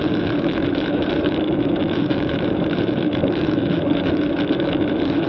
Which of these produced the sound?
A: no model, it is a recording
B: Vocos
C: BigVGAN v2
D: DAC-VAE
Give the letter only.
D